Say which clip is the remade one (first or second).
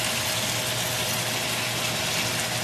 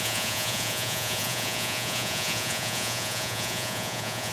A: second